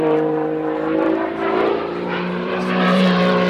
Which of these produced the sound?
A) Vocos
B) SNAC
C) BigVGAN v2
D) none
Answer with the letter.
C